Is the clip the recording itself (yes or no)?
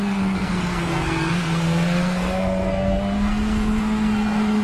no